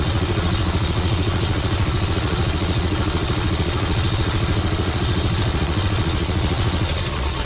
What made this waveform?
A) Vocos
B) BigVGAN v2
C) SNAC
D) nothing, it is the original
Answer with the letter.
A